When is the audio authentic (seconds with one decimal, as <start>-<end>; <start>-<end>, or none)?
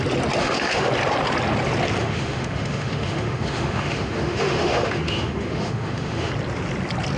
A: 0.0-0.4; 0.9-2.0; 6.3-7.2